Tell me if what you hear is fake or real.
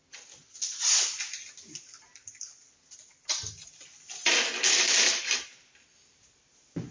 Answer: real